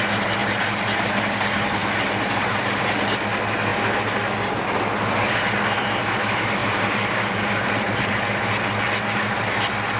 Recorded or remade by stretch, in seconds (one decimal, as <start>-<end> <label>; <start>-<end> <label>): 0.0-1.8 recorded; 1.8-2.7 remade; 2.7-6.6 recorded; 6.6-8.4 remade; 8.4-10.0 recorded